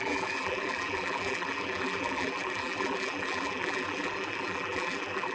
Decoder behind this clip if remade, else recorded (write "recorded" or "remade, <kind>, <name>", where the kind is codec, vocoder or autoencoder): remade, vocoder, BigVGAN v2